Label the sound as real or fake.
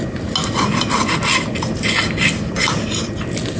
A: real